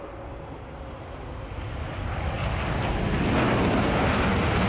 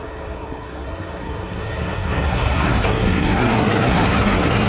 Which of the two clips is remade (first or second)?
second